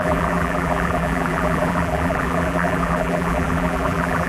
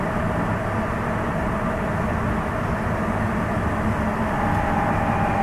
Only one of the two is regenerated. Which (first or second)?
first